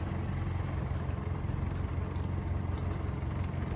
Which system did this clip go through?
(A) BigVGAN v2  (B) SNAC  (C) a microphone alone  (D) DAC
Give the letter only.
C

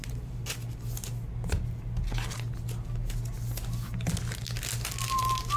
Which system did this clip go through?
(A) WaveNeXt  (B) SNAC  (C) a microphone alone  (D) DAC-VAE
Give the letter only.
C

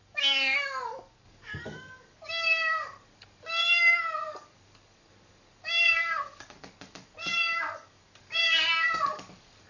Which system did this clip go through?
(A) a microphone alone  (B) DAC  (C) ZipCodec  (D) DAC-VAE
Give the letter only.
B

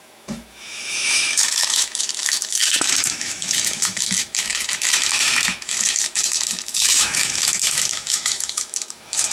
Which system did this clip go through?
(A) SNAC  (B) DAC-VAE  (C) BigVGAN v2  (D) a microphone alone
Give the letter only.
B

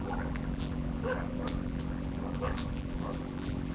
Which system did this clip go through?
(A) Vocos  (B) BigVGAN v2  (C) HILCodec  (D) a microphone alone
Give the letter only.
B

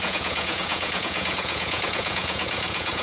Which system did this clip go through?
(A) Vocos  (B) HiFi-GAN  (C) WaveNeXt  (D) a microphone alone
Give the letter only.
A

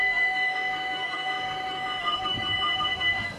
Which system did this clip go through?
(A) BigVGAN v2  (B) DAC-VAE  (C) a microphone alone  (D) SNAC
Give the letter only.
B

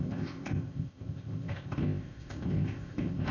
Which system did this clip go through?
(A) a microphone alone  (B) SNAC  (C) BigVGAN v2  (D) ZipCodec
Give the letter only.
D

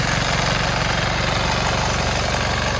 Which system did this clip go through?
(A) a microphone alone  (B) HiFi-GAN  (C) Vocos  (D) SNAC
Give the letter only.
A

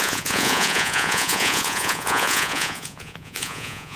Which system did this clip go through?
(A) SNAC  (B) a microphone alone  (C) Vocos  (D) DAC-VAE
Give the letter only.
C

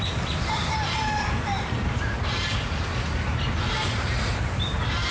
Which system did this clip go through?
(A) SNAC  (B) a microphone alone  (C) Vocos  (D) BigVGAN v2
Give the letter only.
B